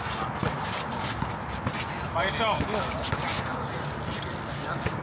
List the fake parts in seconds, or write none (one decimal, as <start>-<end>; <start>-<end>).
none